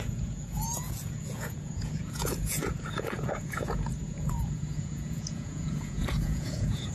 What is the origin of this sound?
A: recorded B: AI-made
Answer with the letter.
B